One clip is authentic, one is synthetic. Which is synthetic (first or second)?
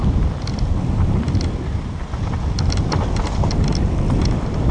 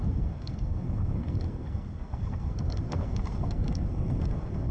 second